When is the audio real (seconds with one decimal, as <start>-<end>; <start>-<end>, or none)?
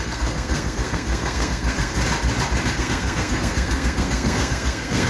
1.9-2.8